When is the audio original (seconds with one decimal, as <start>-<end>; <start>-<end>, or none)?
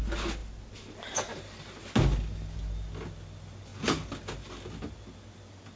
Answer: 0.0-5.8